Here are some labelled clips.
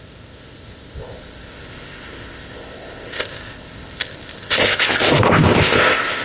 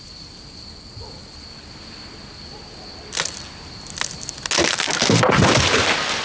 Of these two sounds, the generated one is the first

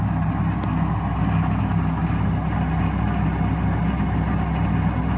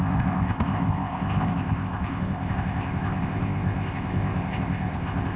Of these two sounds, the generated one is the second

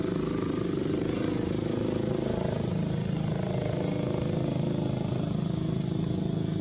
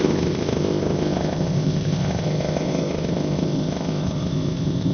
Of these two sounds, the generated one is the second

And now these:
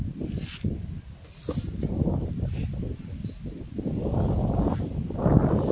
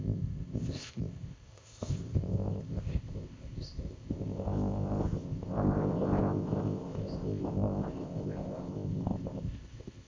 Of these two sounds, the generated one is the second